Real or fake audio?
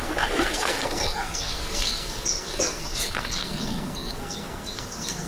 fake